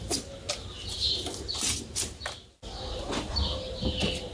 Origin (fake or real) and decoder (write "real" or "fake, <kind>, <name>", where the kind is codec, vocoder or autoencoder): real